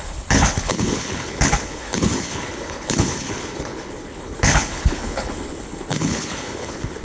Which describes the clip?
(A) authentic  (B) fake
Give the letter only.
B